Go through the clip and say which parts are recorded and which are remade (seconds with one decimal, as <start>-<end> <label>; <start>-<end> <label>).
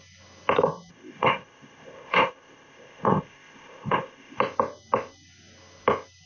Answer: 0.0-0.9 recorded; 0.9-4.4 remade; 4.4-6.3 recorded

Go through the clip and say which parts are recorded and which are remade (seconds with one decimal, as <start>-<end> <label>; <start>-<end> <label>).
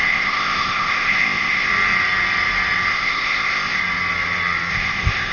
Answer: 0.0-1.7 remade; 1.7-2.9 recorded; 2.9-3.8 remade; 3.8-4.7 recorded; 4.7-5.3 remade